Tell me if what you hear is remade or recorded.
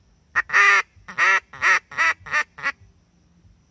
recorded